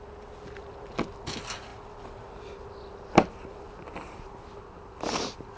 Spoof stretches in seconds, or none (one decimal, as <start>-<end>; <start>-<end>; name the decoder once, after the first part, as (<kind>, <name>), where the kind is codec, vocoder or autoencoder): none